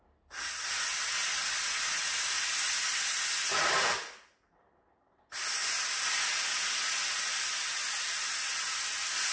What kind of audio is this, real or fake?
real